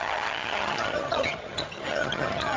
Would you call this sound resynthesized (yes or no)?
yes